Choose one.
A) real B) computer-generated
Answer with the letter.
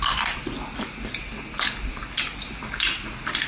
A